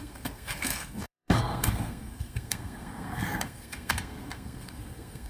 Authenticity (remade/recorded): remade